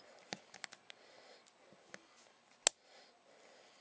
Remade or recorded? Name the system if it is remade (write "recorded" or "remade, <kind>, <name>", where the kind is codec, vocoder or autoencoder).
recorded